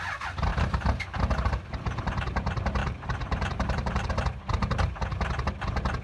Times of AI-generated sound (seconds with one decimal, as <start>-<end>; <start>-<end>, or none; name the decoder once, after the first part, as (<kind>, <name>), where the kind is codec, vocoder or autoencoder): 2.8-4.1 (vocoder, BigVGAN v2)